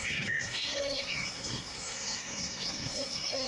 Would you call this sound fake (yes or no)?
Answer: yes